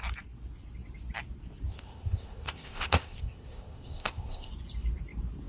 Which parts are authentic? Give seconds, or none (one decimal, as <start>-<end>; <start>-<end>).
0.0-1.7; 4.5-5.5